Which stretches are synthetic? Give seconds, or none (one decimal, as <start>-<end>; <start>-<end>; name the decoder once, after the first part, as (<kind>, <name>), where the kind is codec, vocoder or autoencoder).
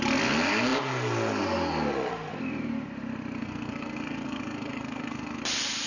3.4-5.4 (codec, SNAC)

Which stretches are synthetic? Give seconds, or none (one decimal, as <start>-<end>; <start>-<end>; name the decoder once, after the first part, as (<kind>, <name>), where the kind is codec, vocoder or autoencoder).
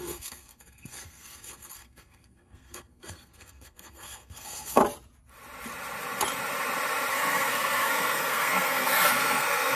0.0-4.8 (codec, SNAC); 7.1-9.8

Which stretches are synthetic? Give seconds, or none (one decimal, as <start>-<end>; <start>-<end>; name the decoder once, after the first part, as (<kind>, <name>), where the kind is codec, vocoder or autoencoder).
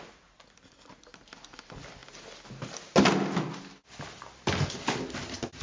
none